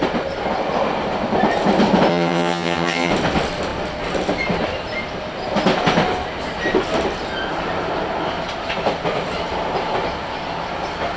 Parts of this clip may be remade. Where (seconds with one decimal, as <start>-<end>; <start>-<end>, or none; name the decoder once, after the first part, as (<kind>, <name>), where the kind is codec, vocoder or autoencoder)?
2.1-3.1 (vocoder, HiFi-GAN)